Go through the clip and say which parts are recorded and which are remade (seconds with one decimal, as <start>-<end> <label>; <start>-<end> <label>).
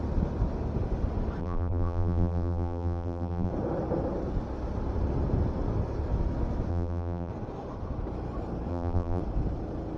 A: 0.0-1.4 recorded; 1.4-3.5 remade; 3.5-6.7 recorded; 6.7-7.3 remade; 7.3-8.7 recorded; 8.7-9.2 remade; 9.2-10.0 recorded